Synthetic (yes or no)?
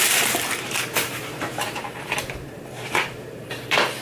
yes